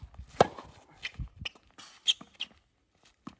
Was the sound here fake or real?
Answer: real